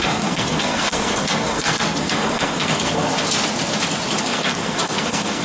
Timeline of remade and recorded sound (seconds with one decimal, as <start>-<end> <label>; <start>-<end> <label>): 0.0-3.1 remade; 3.1-4.2 recorded; 4.2-5.4 remade